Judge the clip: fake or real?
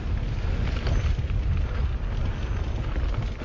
real